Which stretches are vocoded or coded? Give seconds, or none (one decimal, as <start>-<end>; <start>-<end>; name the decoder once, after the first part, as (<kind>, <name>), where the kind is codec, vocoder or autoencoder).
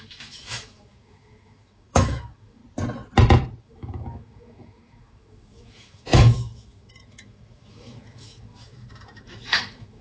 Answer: 0.0-2.6 (autoencoder, DAC-VAE); 3.6-10.0